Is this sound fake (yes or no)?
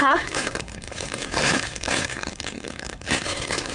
yes